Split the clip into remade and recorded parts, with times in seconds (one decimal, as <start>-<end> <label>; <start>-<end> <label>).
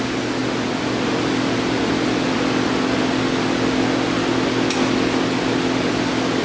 0.0-0.4 recorded; 0.4-3.0 remade; 3.0-6.4 recorded